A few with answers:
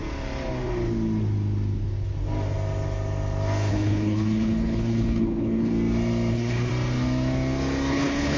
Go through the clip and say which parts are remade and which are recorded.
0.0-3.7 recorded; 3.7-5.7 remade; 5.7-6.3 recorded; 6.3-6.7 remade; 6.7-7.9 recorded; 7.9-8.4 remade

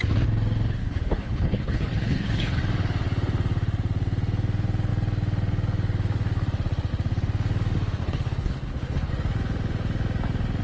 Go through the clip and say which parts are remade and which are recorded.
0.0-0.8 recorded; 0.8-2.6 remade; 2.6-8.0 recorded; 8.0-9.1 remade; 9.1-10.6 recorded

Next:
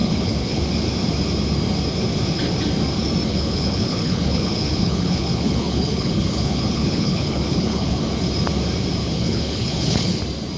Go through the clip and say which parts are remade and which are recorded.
0.0-0.6 remade; 0.6-3.3 recorded; 3.3-8.0 remade; 8.0-9.0 recorded; 9.0-10.2 remade; 10.2-10.6 recorded

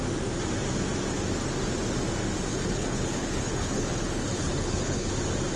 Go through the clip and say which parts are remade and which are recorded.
0.0-2.5 recorded; 2.5-5.1 remade; 5.1-5.6 recorded

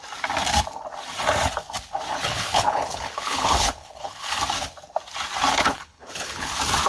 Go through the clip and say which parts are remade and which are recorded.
0.0-2.1 recorded; 2.1-4.4 remade; 4.4-5.5 recorded; 5.5-6.5 remade; 6.5-6.9 recorded

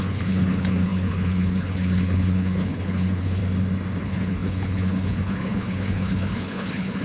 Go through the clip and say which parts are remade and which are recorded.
0.0-3.4 remade; 3.4-4.0 recorded; 4.0-7.0 remade

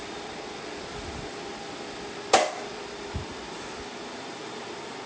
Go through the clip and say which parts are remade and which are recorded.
0.0-5.1 recorded

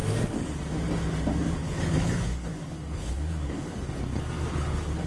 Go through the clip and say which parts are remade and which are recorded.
0.0-1.6 recorded; 1.6-4.0 remade; 4.0-4.5 recorded; 4.5-5.1 remade